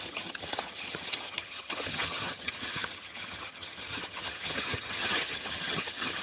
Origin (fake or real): fake